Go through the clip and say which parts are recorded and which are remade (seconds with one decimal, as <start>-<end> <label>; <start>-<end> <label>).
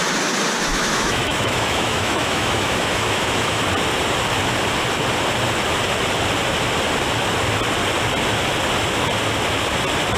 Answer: 0.0-0.7 recorded; 0.7-3.6 remade; 3.6-10.2 recorded